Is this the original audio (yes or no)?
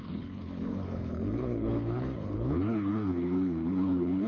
no